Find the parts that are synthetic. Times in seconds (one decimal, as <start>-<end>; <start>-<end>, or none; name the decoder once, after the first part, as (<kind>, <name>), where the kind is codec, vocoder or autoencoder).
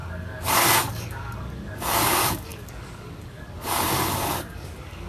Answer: 0.0-5.1 (codec, DAC)